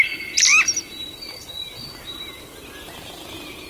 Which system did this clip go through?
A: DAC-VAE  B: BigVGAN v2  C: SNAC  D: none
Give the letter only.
D